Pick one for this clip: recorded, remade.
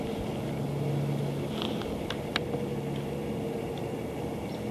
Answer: recorded